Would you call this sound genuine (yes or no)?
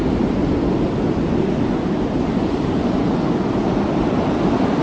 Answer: yes